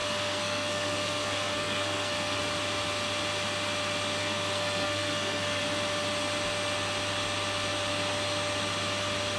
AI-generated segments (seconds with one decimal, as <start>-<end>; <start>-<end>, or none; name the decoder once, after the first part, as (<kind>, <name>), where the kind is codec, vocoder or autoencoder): 0.0-2.4 (codec, SNAC); 4.2-5.6